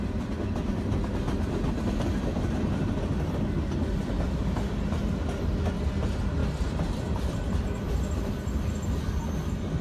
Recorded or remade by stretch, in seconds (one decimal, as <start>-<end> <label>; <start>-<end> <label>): 0.0-4.0 recorded; 4.0-4.8 remade; 4.8-6.4 recorded; 6.4-7.6 remade; 7.6-9.8 recorded